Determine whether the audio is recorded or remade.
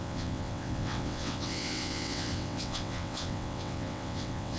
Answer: remade